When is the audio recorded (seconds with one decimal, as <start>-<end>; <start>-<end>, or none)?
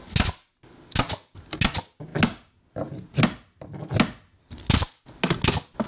0.0-5.9